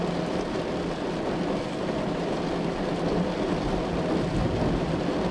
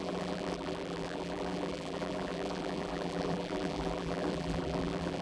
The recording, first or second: first